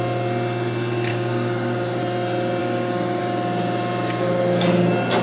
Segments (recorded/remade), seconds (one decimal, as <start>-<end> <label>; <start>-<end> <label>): 0.0-1.1 recorded; 1.1-2.0 remade; 2.0-2.6 recorded; 2.6-3.2 remade; 3.2-5.2 recorded